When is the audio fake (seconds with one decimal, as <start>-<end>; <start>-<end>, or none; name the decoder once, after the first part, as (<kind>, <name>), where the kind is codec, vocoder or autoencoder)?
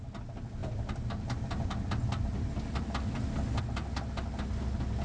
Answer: none